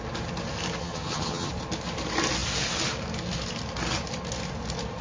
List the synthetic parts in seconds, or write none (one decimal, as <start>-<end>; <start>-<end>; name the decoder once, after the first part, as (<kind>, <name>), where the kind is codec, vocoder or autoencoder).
0.8-1.5 (vocoder, HiFi-GAN)